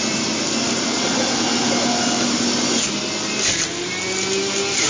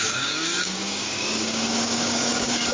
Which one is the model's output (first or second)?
second